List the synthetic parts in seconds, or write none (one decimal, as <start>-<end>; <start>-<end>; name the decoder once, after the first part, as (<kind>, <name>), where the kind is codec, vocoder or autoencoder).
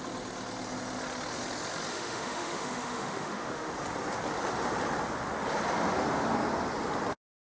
1.9-3.7 (autoencoder, DAC-VAE)